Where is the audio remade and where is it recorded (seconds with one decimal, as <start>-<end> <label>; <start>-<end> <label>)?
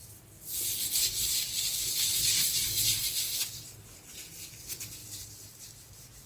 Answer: 0.0-5.0 recorded; 5.0-6.3 remade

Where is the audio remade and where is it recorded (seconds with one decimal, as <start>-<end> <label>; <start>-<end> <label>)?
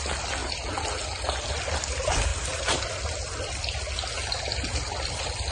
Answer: 0.0-5.5 recorded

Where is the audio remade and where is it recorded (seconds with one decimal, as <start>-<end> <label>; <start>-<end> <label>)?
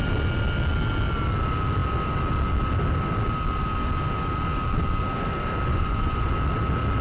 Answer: 0.0-5.7 recorded; 5.7-6.3 remade; 6.3-7.0 recorded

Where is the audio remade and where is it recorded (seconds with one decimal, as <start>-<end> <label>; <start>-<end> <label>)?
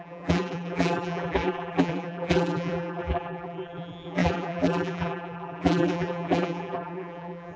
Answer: 0.0-7.6 remade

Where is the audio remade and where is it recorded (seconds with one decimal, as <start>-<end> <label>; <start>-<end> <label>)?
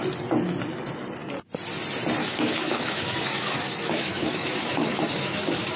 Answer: 0.0-2.2 recorded; 2.2-5.8 remade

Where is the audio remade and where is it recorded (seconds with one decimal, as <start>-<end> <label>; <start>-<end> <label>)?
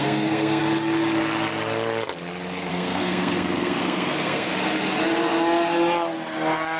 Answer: 0.0-0.6 remade; 0.6-2.7 recorded; 2.7-4.5 remade; 4.5-6.8 recorded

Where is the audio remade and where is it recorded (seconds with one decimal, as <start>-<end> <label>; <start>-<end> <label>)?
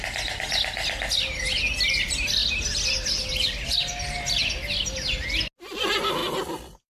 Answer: 0.0-6.9 recorded